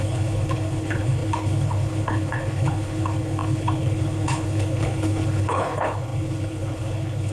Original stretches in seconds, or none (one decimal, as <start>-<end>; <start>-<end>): none